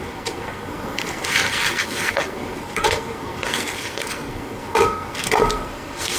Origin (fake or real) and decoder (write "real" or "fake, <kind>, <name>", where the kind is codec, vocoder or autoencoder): fake, codec, SNAC